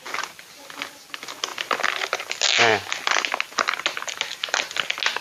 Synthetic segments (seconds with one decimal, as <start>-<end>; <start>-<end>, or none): none